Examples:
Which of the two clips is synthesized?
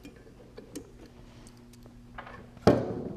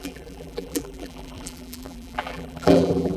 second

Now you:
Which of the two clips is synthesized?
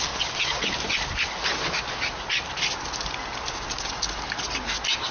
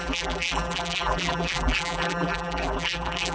second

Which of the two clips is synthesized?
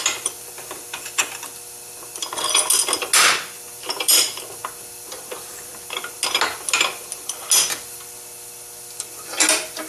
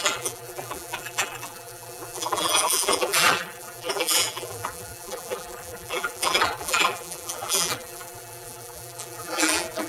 second